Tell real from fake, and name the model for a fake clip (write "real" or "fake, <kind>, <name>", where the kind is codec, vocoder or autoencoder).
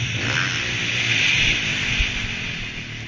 real